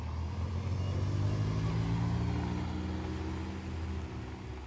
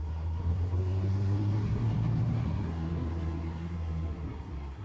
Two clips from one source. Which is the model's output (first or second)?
second